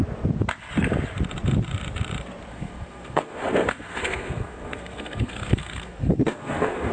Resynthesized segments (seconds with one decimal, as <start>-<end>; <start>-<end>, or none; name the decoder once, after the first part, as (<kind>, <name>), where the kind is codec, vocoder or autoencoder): 2.5-6.9 (codec, SNAC)